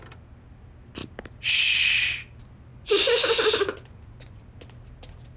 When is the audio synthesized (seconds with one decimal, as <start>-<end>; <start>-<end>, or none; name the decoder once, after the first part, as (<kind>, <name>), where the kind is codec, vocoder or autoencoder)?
2.7-4.4 (vocoder, Vocos)